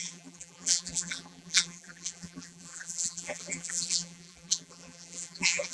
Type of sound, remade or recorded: remade